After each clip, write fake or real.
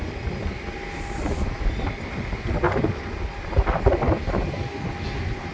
real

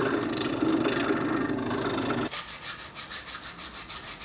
real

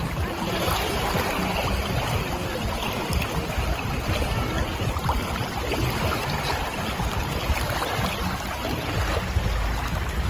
real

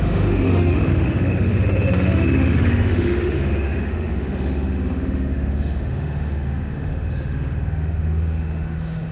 fake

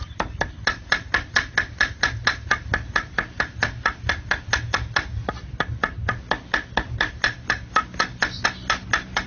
real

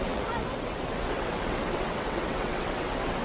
fake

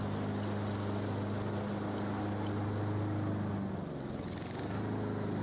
real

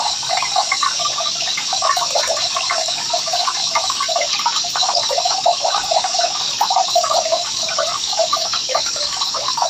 fake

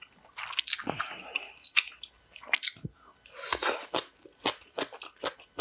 real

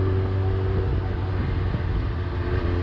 real